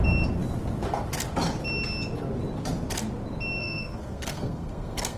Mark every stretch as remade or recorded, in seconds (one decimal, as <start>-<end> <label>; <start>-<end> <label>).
0.0-3.6 recorded; 3.6-5.2 remade